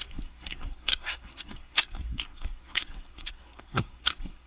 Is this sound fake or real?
fake